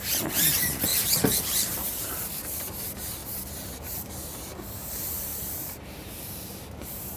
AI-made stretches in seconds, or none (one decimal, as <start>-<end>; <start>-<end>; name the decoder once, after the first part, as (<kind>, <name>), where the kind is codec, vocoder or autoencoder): 0.9-2.3 (vocoder, BigVGAN v2); 3.2-4.1; 5.3-7.2